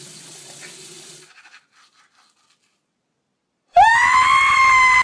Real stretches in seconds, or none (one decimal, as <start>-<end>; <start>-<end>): 0.0-5.0